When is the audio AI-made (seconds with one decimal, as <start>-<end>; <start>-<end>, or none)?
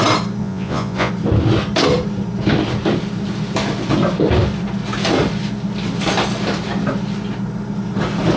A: 0.4-1.1